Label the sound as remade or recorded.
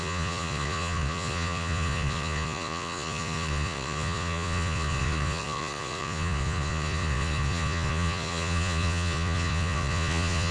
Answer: remade